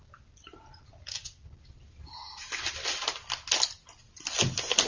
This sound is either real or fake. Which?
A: real